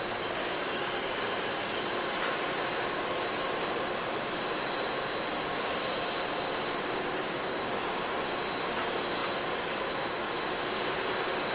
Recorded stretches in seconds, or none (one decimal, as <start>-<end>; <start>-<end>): 0.0-11.5